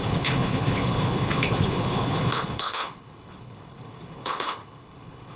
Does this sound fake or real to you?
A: fake